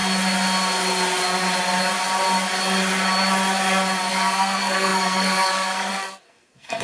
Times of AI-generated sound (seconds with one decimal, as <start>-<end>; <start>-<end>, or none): 4.1-6.8